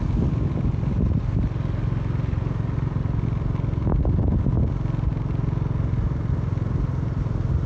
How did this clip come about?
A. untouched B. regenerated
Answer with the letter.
A